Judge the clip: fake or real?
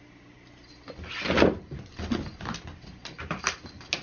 real